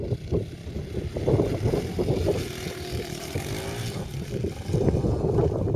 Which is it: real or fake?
real